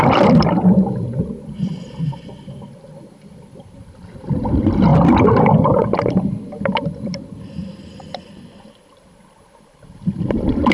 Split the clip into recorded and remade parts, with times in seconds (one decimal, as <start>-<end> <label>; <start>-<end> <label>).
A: 0.0-10.7 remade